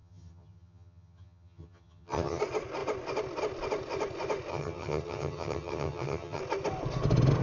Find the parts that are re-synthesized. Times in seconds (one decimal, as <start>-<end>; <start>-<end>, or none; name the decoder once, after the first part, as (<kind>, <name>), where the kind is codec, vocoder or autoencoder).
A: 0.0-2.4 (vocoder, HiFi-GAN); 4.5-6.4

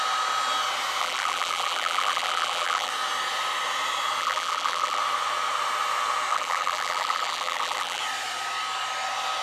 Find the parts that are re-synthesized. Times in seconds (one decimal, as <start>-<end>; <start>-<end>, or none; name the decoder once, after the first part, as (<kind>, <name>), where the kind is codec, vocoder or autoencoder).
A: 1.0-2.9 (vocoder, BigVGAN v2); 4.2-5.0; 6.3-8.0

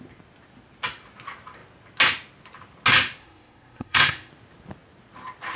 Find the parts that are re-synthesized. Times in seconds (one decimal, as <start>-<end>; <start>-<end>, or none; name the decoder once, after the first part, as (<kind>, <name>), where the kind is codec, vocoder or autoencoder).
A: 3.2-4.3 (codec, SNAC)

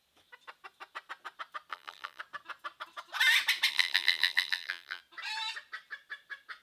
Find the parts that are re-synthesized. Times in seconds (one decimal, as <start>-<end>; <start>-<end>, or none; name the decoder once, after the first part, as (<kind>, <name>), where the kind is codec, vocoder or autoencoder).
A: 1.7-2.2 (vocoder, BigVGAN v2); 3.7-5.0

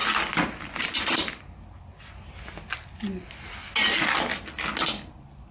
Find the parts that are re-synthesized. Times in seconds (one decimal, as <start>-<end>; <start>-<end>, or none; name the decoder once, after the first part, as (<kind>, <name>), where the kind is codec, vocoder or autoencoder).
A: none

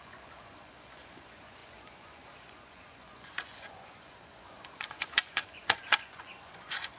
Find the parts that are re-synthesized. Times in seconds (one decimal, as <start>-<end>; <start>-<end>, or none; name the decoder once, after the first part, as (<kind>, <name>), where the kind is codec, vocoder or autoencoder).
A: 0.0-7.0 (vocoder, Vocos)